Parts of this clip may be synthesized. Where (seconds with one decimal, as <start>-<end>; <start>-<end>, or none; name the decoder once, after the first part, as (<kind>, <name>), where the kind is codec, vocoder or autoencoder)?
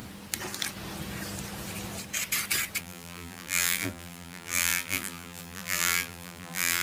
2.8-6.8 (vocoder, BigVGAN v2)